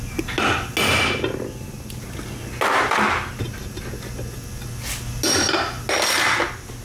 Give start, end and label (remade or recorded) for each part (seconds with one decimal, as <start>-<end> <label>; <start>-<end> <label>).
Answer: 0.0-6.8 recorded